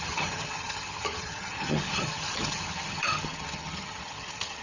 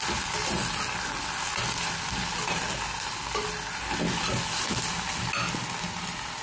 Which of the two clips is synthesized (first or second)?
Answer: first